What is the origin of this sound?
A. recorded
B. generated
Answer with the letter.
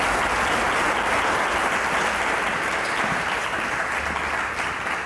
A